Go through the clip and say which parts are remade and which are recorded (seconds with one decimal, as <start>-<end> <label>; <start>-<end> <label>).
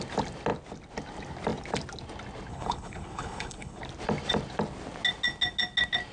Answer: 0.0-2.5 recorded; 2.5-3.8 remade; 3.8-6.1 recorded